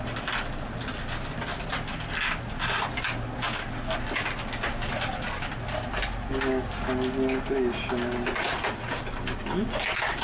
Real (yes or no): yes